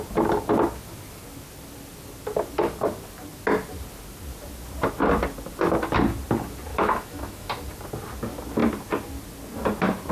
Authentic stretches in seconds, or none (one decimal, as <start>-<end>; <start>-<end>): 0.0-6.7; 7.5-10.1